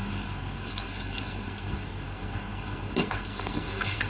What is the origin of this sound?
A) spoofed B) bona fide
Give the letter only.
A